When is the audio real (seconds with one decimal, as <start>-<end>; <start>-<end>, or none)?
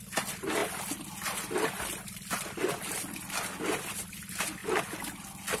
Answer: 0.0-5.6